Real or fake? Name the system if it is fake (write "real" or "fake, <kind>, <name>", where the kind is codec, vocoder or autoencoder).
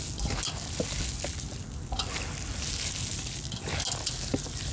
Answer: real